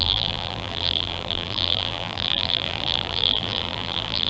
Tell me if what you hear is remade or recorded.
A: remade